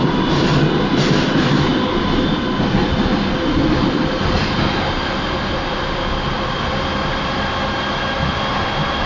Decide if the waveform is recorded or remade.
recorded